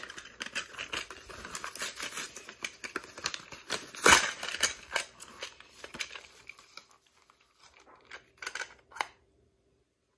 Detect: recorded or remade recorded